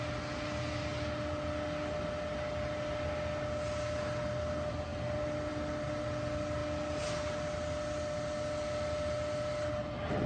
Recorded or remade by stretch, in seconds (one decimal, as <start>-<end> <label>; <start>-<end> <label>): 0.0-10.3 recorded